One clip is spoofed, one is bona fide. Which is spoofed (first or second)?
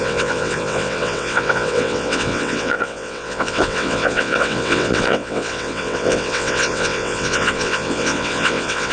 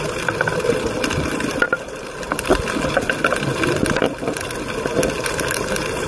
first